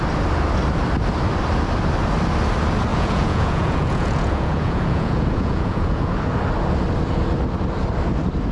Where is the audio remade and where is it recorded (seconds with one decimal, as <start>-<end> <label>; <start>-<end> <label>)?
0.0-2.9 recorded; 2.9-6.1 remade; 6.1-8.5 recorded